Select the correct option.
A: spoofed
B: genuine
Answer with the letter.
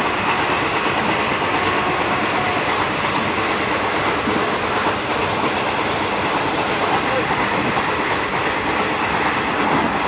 B